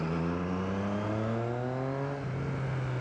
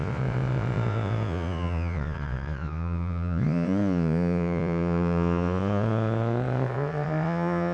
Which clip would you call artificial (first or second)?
second